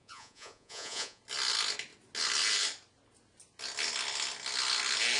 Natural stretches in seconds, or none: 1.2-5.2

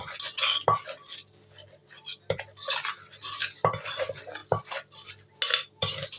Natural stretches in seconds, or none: 0.0-6.2

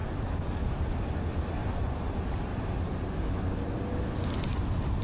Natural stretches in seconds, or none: 0.0-1.6; 2.1-5.0